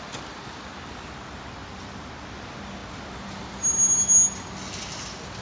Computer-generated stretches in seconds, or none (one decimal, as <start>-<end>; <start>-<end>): none